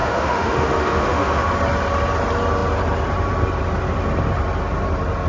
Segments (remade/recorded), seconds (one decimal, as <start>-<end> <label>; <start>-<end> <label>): 0.0-1.5 remade; 1.5-5.3 recorded